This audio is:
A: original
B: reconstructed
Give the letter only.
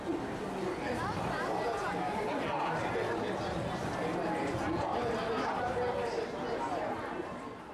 A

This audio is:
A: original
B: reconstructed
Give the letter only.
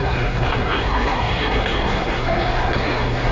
B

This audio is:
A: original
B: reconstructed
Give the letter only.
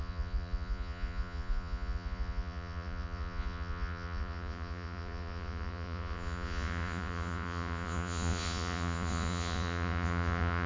B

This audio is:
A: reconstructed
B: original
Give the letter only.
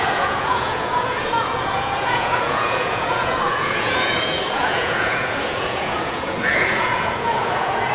A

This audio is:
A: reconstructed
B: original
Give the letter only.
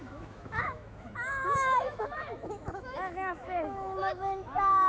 A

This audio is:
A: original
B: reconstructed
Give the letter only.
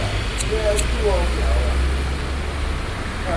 A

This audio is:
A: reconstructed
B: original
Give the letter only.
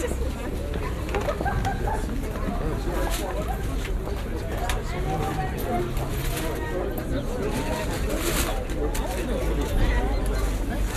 B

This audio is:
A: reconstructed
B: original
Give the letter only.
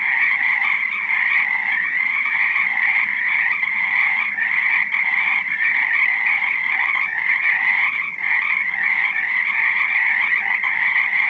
A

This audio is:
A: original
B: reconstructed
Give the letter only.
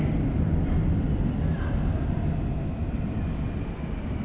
A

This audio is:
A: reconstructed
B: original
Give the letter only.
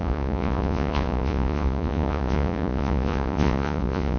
A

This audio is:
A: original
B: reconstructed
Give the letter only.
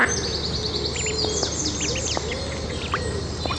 A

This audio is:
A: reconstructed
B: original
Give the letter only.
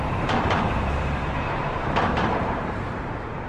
A